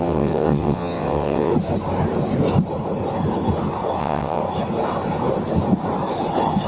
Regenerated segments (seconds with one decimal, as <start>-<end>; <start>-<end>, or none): 0.0-1.5; 4.0-4.4

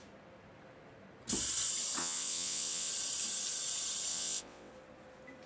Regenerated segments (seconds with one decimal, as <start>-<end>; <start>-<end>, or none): 2.0-2.9; 4.1-4.7